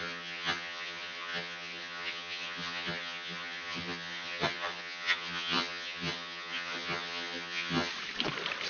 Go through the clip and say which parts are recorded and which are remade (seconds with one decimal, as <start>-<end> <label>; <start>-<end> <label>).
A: 0.0-7.9 remade; 7.9-8.7 recorded